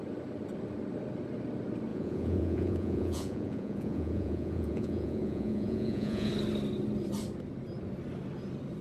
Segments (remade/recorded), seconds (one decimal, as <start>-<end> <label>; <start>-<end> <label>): 0.0-1.9 recorded; 1.9-6.3 remade; 6.3-8.8 recorded